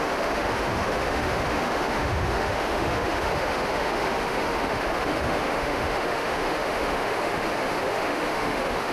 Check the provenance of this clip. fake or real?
fake